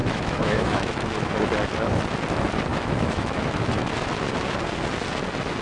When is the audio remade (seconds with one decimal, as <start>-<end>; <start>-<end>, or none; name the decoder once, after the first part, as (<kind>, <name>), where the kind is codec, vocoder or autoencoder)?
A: 0.0-1.3 (autoencoder, DAC-VAE); 2.7-3.7